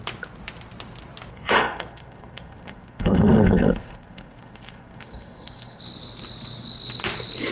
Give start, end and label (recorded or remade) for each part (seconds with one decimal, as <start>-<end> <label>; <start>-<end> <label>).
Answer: 0.0-1.3 recorded; 1.3-5.8 remade; 5.8-7.5 recorded